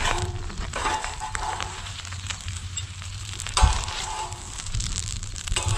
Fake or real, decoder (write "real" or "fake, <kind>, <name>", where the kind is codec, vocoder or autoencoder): fake, vocoder, BigVGAN v2